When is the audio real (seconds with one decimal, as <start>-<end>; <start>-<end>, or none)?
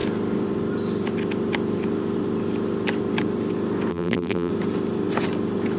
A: 0.0-3.9; 4.5-5.8